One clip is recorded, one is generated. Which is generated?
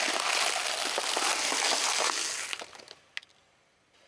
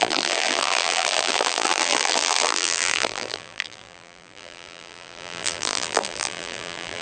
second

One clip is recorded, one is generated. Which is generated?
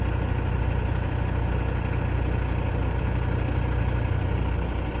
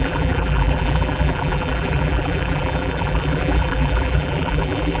second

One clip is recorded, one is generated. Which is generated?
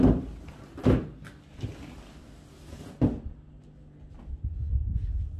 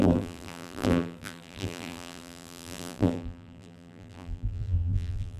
second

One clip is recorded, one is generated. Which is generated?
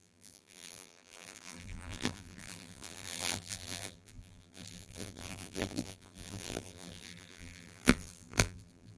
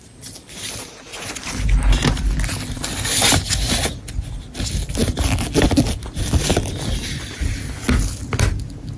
first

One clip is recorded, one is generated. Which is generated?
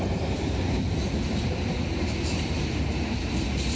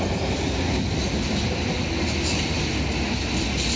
first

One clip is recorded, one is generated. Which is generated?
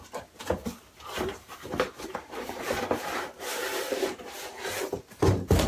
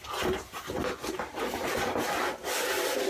first